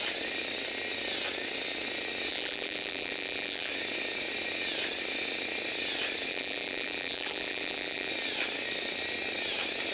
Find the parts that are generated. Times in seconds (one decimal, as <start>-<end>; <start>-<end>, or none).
2.3-3.7; 6.3-8.1